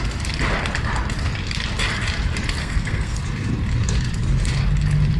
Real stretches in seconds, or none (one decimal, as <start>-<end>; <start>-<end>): 0.0-2.6; 3.2-5.2